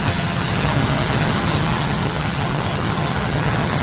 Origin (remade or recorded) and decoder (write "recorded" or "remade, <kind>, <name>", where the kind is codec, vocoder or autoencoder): remade, vocoder, HiFi-GAN